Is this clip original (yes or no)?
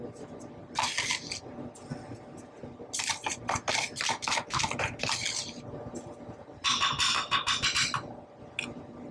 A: yes